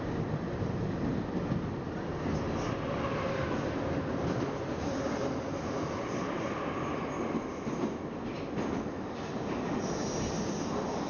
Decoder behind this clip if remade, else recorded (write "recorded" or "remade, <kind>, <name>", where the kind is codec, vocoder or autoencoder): recorded